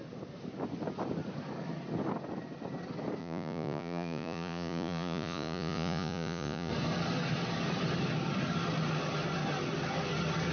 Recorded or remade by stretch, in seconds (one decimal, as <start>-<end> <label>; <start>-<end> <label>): 0.0-3.2 recorded; 3.2-6.7 remade; 6.7-10.5 recorded